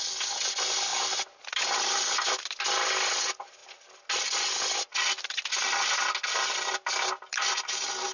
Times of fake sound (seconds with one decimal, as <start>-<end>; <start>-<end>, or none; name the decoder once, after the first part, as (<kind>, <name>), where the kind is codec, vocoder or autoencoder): none